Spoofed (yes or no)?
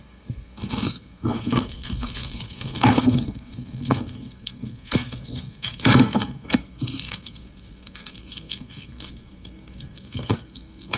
yes